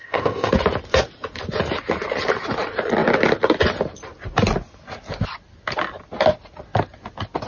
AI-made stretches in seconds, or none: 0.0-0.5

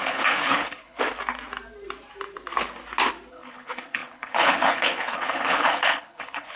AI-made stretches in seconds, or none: 0.0-1.0; 3.3-6.6

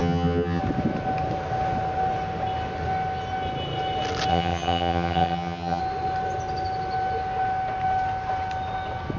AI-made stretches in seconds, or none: 0.0-0.6; 4.3-5.8

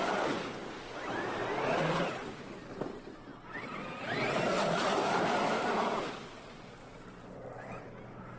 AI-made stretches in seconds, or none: none

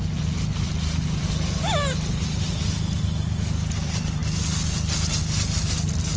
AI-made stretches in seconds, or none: none